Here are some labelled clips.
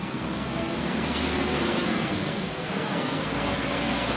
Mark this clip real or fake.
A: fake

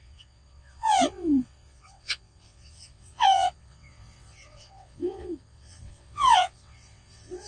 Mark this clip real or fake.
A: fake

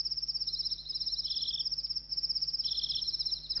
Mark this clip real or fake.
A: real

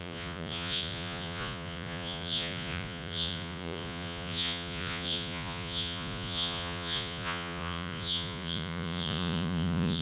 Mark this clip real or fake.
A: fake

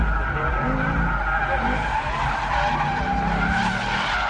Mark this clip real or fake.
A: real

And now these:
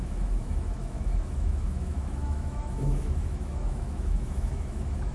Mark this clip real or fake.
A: fake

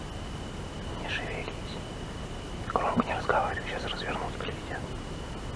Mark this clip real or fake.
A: real